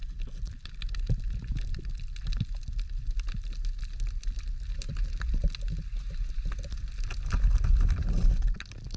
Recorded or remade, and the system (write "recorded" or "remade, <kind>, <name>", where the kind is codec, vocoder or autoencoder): recorded